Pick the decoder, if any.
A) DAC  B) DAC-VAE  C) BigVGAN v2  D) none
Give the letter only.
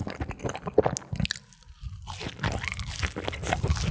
D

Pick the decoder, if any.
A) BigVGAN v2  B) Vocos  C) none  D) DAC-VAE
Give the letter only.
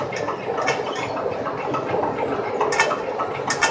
C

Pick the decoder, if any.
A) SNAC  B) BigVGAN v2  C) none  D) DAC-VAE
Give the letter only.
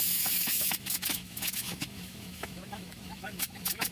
D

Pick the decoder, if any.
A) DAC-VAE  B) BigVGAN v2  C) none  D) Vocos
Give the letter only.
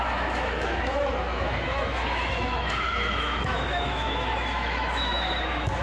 A